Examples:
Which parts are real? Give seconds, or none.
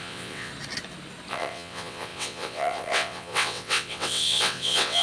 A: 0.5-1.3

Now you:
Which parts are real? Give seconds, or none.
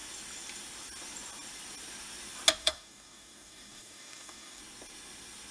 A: 0.0-2.6; 4.6-5.5